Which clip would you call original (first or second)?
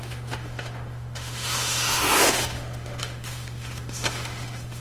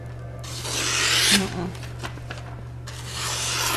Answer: second